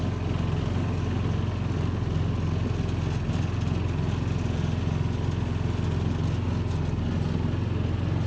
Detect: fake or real real